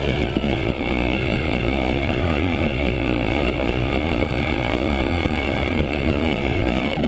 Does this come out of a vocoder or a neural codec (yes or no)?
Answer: yes